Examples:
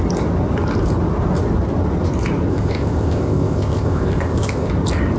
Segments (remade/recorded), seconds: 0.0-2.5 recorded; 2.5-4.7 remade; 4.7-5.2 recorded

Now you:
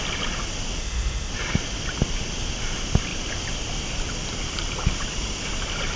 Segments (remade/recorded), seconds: 0.0-0.8 recorded; 0.8-1.3 remade; 1.3-6.0 recorded